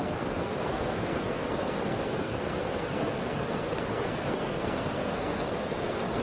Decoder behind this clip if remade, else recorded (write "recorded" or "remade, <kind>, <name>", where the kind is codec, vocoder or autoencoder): remade, codec, SNAC